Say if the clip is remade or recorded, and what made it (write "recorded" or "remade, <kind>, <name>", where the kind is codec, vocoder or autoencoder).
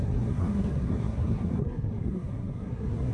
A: remade, codec, SNAC